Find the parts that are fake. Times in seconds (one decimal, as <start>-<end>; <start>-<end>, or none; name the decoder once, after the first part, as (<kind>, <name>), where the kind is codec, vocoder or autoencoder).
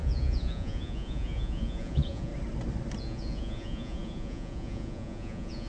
0.0-2.3 (vocoder, Vocos); 3.0-5.7